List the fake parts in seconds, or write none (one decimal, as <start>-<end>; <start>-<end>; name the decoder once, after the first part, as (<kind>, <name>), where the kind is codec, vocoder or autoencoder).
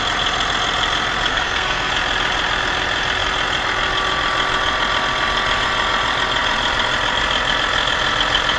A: 1.3-1.9 (codec, SNAC)